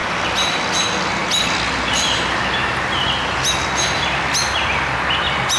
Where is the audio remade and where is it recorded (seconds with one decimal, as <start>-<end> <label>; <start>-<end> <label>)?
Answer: 0.0-0.6 remade; 0.6-5.6 recorded

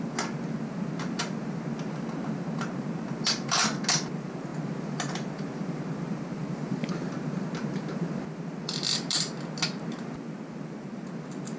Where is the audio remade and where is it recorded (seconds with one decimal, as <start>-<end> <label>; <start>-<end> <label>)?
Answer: 0.0-11.6 recorded

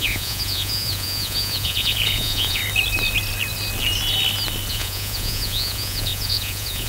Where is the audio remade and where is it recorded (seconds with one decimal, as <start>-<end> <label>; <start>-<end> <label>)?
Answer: 0.0-2.6 remade; 2.6-4.7 recorded; 4.7-6.9 remade